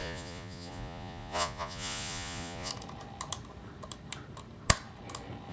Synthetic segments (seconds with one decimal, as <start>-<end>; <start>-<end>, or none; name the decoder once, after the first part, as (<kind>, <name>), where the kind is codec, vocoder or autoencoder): 0.0-2.7 (vocoder, Vocos)